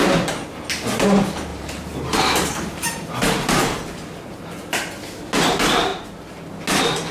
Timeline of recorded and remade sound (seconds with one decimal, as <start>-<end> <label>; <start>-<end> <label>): 0.0-1.5 recorded; 1.5-4.5 remade; 4.5-5.9 recorded; 5.9-6.5 remade; 6.5-7.1 recorded